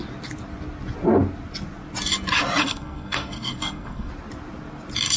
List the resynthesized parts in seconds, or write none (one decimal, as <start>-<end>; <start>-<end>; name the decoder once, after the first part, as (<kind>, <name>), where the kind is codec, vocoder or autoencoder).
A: 2.6-4.1 (codec, SNAC)